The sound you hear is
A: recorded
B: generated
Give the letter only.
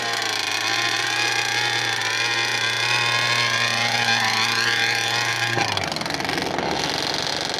A